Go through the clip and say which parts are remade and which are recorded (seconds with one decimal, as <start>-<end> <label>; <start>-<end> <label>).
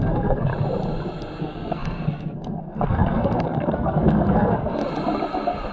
0.0-0.5 remade; 0.5-1.4 recorded; 1.4-4.8 remade; 4.8-5.7 recorded